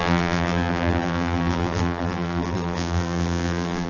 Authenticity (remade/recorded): remade